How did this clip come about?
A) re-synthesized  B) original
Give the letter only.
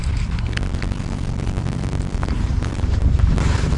A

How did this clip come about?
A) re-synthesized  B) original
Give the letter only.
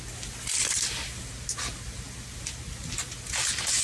B